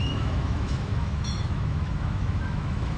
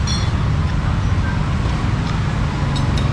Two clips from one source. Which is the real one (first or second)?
second